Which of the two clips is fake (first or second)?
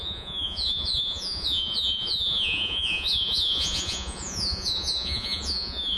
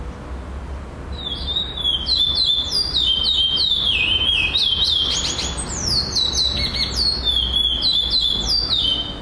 first